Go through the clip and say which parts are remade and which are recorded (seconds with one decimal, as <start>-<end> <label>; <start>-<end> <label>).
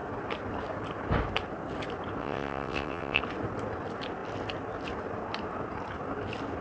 0.0-2.2 recorded; 2.2-3.2 remade; 3.2-6.6 recorded